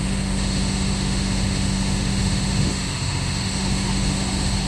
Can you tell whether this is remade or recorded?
remade